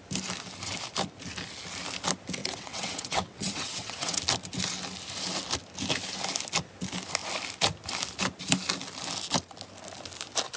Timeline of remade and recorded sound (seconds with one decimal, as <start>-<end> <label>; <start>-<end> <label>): 0.0-2.4 recorded; 2.4-4.2 remade; 4.2-10.6 recorded

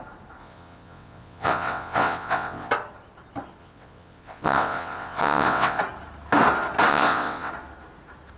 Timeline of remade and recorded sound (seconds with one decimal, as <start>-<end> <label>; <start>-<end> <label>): 0.0-0.4 recorded; 0.4-2.7 remade; 2.7-3.6 recorded; 3.6-5.8 remade; 5.8-6.9 recorded; 6.9-7.5 remade; 7.5-8.4 recorded

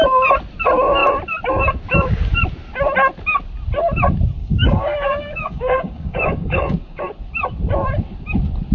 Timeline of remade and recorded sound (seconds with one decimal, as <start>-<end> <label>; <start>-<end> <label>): 0.0-4.4 recorded; 4.4-7.0 remade; 7.0-8.7 recorded

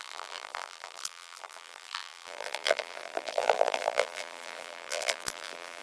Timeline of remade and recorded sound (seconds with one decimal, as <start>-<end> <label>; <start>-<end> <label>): 0.0-5.8 remade

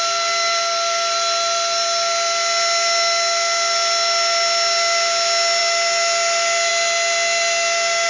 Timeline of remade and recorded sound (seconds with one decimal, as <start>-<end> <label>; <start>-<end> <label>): 0.0-8.1 recorded

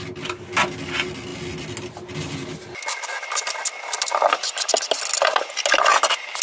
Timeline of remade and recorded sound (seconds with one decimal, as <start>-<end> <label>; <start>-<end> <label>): 0.0-6.4 recorded

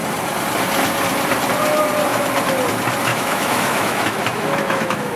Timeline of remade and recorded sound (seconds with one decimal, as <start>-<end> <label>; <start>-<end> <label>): 0.0-3.1 recorded; 3.1-5.2 remade

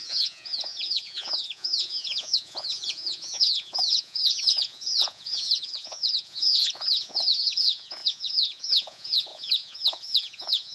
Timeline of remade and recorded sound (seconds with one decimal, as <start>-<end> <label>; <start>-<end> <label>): 0.0-10.7 remade